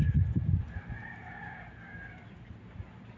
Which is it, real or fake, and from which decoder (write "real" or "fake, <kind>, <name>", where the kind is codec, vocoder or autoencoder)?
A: real